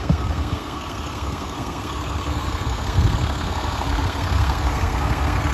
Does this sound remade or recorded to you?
remade